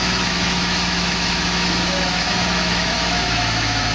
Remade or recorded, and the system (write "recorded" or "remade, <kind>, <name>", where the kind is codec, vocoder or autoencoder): remade, autoencoder, DAC-VAE